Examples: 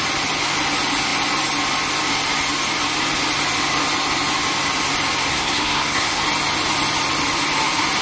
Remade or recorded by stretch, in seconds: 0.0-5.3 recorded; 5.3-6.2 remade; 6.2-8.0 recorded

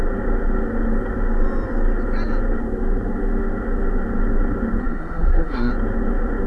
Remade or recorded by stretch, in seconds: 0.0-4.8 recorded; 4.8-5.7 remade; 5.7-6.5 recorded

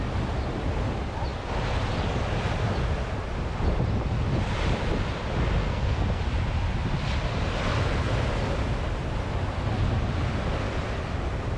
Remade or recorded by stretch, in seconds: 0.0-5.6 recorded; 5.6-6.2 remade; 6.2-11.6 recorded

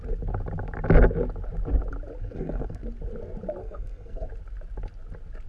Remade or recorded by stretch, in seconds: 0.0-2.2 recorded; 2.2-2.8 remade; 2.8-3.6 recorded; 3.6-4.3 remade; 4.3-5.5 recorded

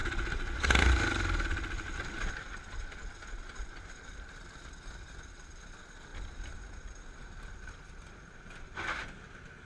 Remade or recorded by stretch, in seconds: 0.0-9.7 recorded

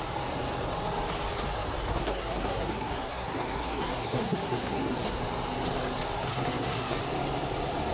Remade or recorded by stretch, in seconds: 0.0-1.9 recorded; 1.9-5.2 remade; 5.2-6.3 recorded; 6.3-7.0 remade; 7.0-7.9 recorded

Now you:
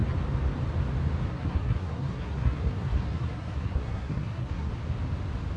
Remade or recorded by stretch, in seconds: 0.0-1.3 recorded; 1.3-4.7 remade; 4.7-5.6 recorded